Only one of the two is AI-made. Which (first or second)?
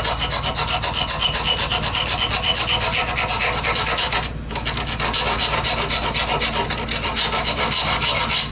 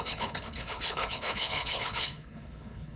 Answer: second